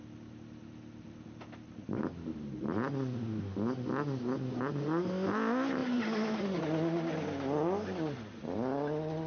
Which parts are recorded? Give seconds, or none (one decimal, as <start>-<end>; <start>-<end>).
0.0-9.3